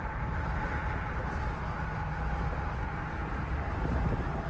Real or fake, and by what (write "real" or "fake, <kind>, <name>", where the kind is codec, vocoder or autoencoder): real